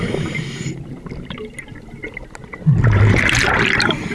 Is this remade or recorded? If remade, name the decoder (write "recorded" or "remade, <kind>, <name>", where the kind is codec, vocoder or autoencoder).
recorded